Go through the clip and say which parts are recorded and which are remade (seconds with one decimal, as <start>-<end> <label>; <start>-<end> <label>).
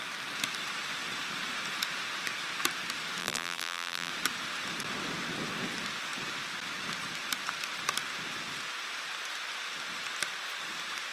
0.0-3.2 recorded; 3.2-4.1 remade; 4.1-11.1 recorded